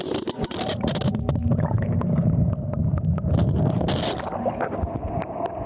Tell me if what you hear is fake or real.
real